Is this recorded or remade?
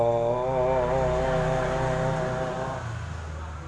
recorded